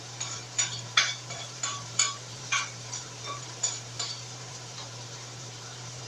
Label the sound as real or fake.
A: fake